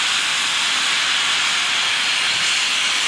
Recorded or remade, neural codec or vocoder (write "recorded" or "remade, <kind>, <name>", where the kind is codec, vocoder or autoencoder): recorded